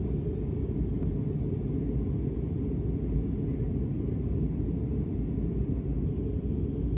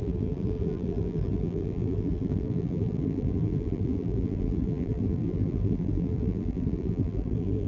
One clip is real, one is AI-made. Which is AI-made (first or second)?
second